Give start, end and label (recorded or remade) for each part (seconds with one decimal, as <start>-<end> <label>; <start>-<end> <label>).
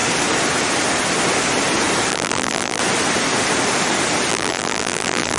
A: 0.0-2.1 recorded; 2.1-2.8 remade; 2.8-4.3 recorded; 4.3-5.4 remade